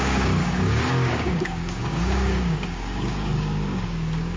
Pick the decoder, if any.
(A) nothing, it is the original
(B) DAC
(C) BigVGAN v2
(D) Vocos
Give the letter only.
B